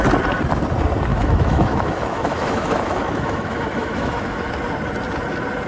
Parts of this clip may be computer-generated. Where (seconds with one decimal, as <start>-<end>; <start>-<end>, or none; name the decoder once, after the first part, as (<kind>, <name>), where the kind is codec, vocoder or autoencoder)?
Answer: 1.1-4.5 (autoencoder, DAC-VAE)